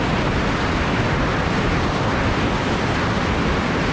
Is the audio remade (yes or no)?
no